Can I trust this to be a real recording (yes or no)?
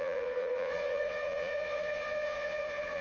no